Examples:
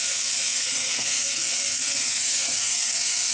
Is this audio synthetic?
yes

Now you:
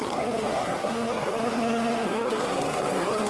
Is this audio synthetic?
yes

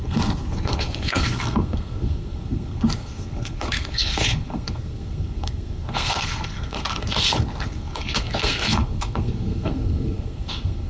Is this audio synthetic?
yes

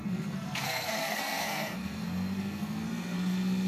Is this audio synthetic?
yes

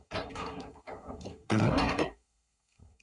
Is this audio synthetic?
yes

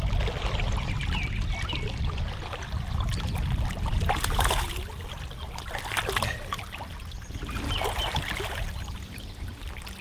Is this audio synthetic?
no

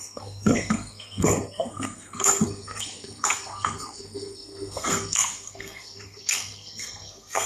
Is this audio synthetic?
yes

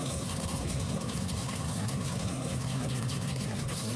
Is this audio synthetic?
yes